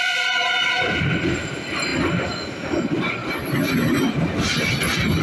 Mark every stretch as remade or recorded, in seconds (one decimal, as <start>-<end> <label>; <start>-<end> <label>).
0.0-5.2 recorded